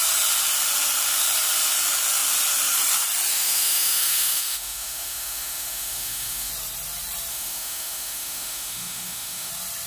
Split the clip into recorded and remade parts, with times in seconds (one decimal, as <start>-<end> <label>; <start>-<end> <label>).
0.0-3.3 recorded; 3.3-6.5 remade; 6.5-7.3 recorded; 7.3-9.5 remade; 9.5-9.9 recorded